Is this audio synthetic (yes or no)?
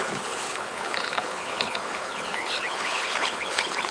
yes